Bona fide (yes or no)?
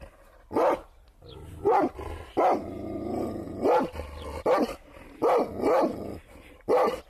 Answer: yes